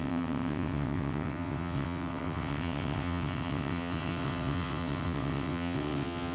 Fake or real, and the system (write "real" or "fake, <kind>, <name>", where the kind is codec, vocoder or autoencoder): fake, vocoder, WaveNeXt